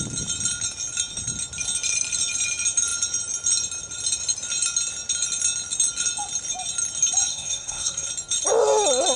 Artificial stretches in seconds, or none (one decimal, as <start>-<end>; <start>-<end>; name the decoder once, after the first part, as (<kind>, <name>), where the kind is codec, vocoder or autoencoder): 7.3-8.1 (codec, SNAC)